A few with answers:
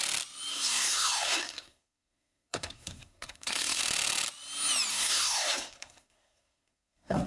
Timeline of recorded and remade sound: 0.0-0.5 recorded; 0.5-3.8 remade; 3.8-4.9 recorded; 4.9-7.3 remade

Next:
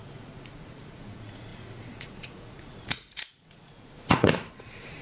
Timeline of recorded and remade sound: 0.0-5.0 remade

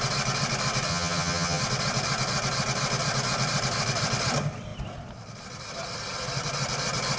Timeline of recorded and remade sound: 0.0-0.9 recorded; 0.9-1.6 remade; 1.6-7.2 recorded

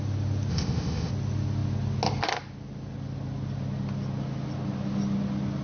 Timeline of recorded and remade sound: 0.0-0.5 recorded; 0.5-1.1 remade; 1.1-5.6 recorded